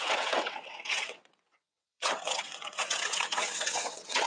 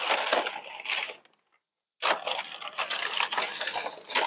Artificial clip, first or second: first